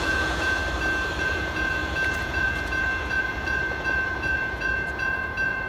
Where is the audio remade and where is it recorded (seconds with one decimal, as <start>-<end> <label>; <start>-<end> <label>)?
0.0-0.6 remade; 0.6-1.2 recorded; 1.2-5.7 remade

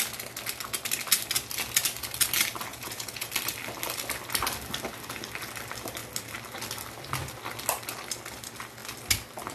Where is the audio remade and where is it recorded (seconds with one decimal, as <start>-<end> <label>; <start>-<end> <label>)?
0.0-2.7 recorded; 2.7-3.3 remade; 3.3-9.5 recorded

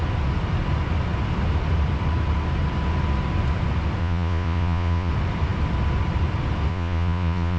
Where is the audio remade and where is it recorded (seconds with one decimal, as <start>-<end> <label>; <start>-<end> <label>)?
0.0-4.0 recorded; 4.0-5.1 remade; 5.1-6.7 recorded; 6.7-7.6 remade

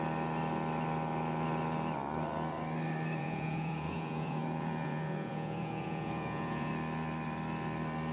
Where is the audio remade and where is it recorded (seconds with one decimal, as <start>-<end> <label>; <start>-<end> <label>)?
0.0-3.2 recorded; 3.2-6.7 remade; 6.7-8.1 recorded